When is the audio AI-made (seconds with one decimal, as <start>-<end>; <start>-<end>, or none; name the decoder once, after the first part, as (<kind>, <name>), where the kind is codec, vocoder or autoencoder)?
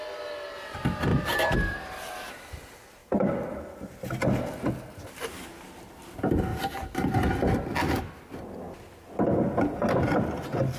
1.1-2.4 (vocoder, BigVGAN v2); 3.0-3.6; 6.5-7.3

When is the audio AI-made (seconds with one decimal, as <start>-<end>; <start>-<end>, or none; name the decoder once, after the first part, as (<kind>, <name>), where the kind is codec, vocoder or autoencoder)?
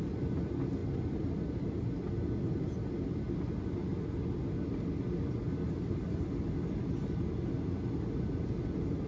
0.8-1.9 (vocoder, BigVGAN v2)